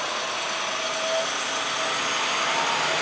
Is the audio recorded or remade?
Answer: recorded